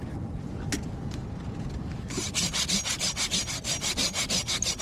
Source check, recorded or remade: recorded